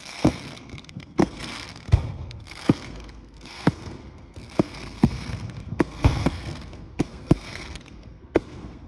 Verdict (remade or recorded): remade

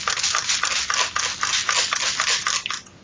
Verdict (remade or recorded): recorded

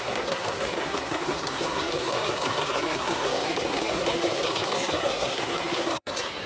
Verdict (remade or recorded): remade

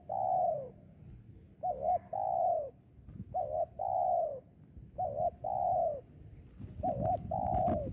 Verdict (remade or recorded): recorded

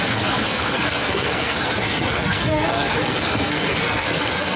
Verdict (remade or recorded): remade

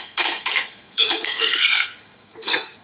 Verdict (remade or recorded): remade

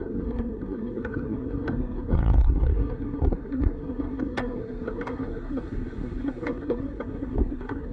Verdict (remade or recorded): remade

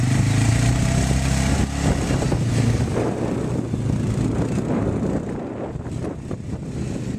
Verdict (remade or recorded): recorded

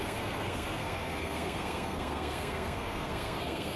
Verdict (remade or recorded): remade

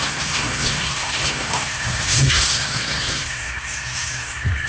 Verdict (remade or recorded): remade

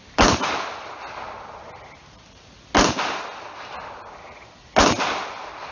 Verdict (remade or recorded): recorded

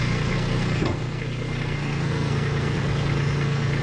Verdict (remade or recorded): remade